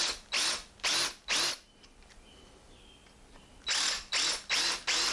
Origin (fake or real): real